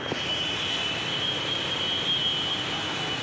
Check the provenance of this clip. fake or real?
real